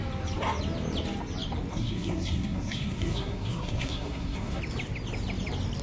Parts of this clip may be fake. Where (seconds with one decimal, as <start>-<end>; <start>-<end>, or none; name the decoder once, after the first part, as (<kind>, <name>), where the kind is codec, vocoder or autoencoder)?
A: 1.7-4.6 (codec, SNAC)